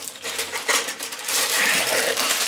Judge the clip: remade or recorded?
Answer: remade